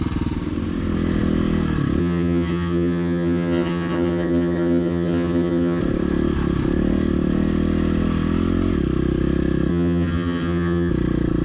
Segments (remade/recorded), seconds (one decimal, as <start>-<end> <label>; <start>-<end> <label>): 0.0-2.0 recorded; 2.0-5.8 remade; 5.8-9.7 recorded; 9.7-10.9 remade; 10.9-11.4 recorded